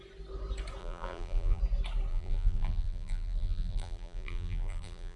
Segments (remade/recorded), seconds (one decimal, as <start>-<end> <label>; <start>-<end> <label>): 0.0-0.8 recorded; 0.8-1.6 remade; 1.6-2.1 recorded; 2.1-5.2 remade